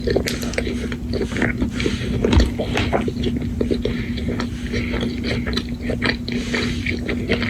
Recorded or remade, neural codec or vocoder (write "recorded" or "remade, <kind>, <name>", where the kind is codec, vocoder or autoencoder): recorded